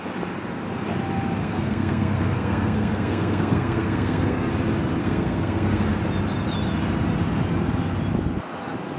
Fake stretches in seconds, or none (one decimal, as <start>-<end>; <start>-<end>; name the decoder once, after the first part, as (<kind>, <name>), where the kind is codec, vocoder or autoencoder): 1.4-4.5 (codec, SNAC); 5.0-6.0